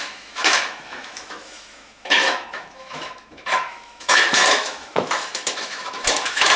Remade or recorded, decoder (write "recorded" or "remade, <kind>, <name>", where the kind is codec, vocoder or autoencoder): remade, autoencoder, DAC-VAE